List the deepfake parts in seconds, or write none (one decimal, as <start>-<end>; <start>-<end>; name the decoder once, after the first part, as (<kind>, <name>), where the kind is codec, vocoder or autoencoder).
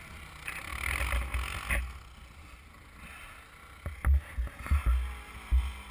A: none